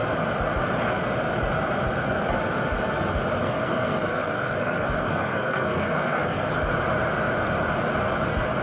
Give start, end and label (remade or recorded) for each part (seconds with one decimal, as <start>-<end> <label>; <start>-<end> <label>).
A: 0.0-3.4 recorded; 3.4-6.5 remade; 6.5-8.6 recorded